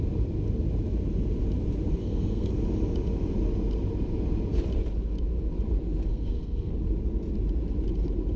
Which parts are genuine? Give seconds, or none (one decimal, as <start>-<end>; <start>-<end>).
0.0-2.0; 2.5-6.1; 6.7-8.4